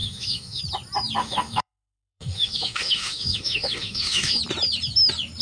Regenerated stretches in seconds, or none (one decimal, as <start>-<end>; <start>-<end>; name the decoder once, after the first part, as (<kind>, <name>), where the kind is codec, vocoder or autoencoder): 0.0-0.6 (autoencoder, DAC-VAE); 1.2-4.4